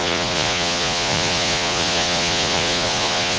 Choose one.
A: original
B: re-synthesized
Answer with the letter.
B